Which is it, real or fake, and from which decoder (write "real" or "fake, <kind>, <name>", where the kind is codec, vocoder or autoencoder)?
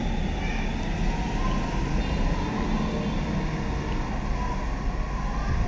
real